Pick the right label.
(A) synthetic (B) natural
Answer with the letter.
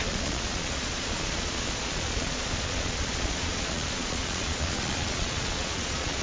A